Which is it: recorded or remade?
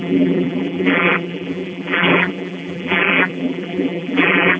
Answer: remade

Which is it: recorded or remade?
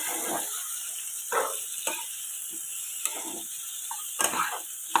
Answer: remade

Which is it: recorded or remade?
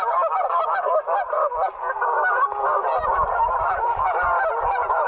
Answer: recorded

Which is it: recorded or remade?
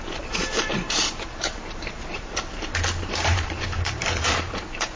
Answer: remade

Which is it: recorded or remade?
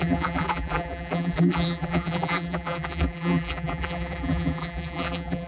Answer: remade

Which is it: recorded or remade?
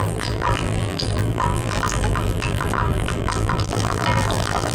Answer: remade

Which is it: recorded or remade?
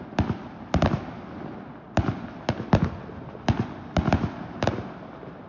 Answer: recorded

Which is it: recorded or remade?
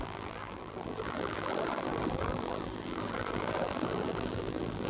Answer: remade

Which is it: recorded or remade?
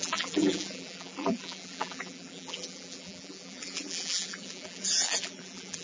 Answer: remade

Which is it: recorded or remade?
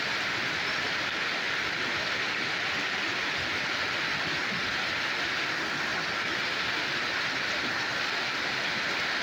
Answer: recorded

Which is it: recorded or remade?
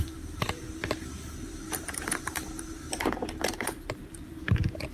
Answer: remade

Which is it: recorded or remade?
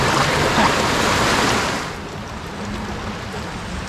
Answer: remade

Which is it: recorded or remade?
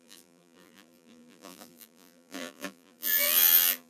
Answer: remade